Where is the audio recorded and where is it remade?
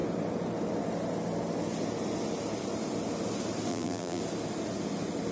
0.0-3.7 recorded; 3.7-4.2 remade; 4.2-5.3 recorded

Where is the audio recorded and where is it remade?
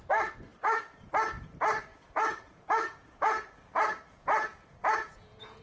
0.0-1.9 recorded; 1.9-5.6 remade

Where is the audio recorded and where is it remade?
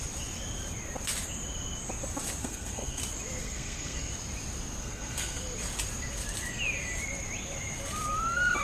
0.0-2.4 recorded; 2.4-3.0 remade; 3.0-3.4 recorded; 3.4-4.1 remade; 4.1-4.8 recorded; 4.8-5.4 remade; 5.4-8.6 recorded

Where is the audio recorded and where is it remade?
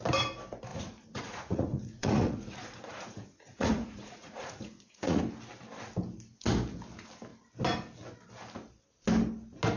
0.0-0.7 recorded; 0.7-5.2 remade; 5.2-9.8 recorded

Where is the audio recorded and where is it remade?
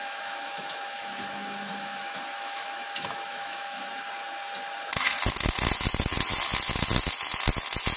0.0-3.8 remade; 3.8-8.0 recorded